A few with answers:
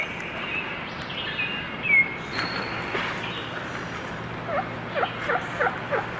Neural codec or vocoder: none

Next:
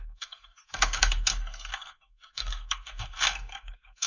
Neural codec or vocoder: codec, SNAC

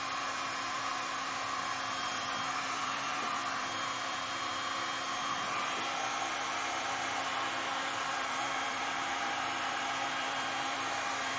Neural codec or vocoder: vocoder, BigVGAN v2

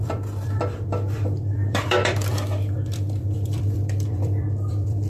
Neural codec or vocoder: vocoder, BigVGAN v2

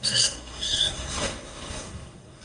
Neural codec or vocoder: codec, SNAC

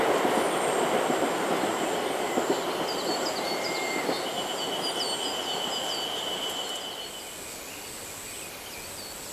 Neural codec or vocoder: none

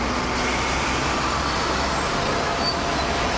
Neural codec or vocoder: none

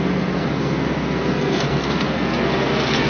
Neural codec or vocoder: codec, SNAC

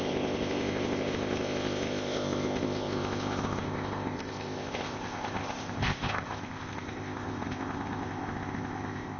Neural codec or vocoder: codec, ZipCodec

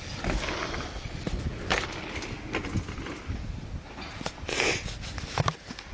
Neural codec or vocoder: none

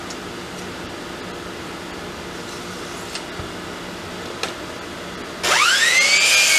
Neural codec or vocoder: none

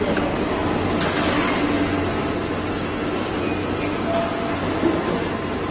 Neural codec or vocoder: none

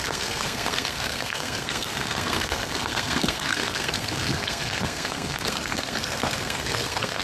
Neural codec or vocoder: codec, SNAC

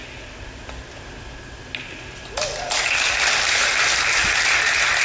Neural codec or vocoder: none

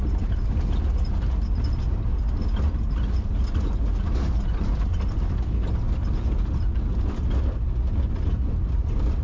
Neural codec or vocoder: none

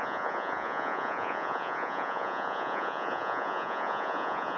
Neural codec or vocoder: vocoder, Vocos